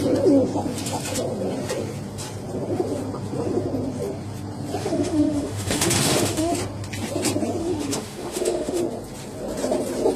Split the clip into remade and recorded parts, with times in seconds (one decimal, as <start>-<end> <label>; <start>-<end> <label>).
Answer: 0.0-4.8 recorded; 4.8-6.5 remade; 6.5-7.6 recorded; 7.6-8.8 remade; 8.8-10.2 recorded